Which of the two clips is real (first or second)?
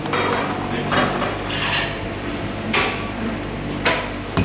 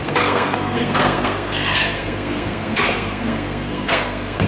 first